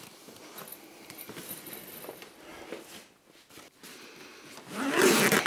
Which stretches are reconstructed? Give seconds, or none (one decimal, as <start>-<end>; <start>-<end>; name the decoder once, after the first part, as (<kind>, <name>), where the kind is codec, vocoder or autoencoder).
0.0-2.5 (vocoder, BigVGAN v2); 4.1-5.5